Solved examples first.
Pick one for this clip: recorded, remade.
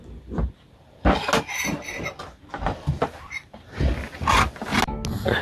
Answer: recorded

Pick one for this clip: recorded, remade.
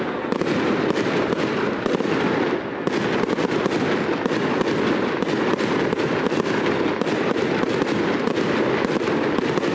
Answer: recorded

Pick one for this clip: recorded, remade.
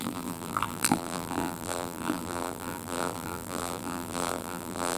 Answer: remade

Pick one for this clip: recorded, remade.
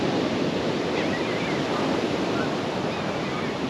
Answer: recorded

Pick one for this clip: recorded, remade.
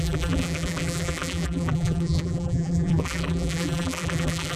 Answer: remade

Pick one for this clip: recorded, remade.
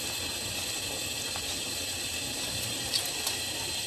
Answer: recorded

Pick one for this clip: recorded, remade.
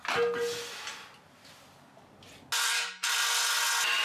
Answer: recorded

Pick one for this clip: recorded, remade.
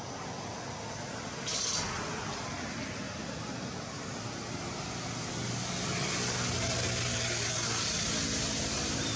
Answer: recorded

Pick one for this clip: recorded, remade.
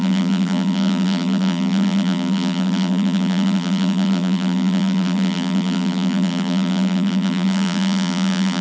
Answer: remade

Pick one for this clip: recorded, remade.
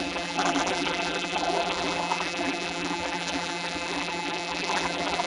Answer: remade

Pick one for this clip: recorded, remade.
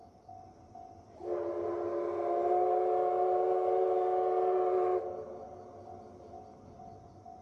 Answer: recorded